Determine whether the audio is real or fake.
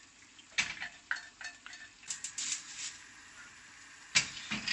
real